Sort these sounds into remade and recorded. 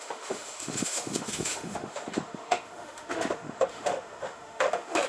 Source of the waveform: remade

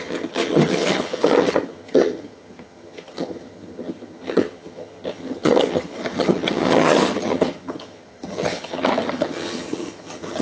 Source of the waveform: remade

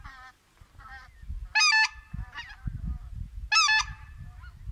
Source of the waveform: recorded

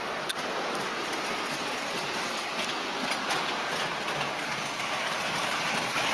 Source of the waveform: recorded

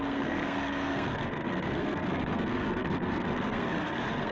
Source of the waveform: remade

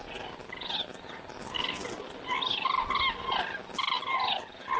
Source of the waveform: recorded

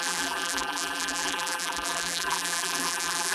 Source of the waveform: remade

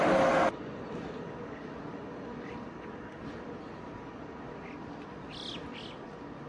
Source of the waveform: recorded